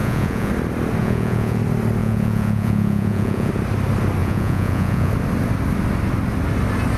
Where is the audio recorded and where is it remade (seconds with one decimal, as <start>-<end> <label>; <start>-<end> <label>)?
0.0-0.5 remade; 0.5-1.0 recorded; 1.0-1.6 remade; 1.6-2.0 recorded; 2.0-3.5 remade; 3.5-4.2 recorded; 4.2-5.1 remade; 5.1-7.0 recorded